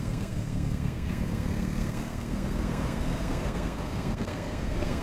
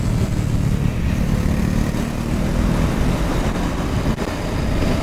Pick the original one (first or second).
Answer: second